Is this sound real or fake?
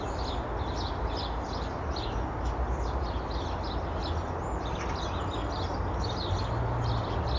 real